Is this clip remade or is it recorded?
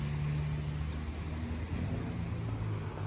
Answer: recorded